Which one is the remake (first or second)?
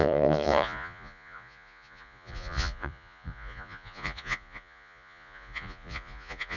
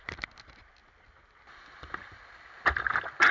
first